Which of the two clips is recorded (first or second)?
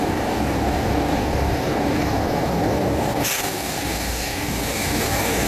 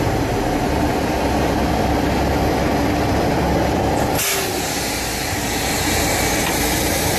second